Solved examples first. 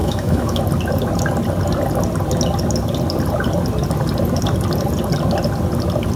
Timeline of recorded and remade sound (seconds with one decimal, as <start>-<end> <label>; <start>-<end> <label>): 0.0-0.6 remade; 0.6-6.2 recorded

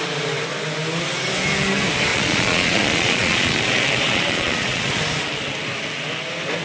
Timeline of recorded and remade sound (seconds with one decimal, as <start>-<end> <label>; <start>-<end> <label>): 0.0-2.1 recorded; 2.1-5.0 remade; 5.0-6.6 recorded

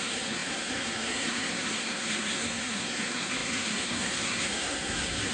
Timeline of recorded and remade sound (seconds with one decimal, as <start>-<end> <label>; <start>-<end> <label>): 0.0-5.3 remade

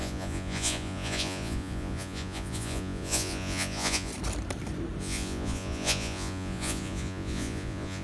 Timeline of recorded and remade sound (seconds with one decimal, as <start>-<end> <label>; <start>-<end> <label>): 0.0-4.1 remade; 4.1-5.0 recorded; 5.0-8.0 remade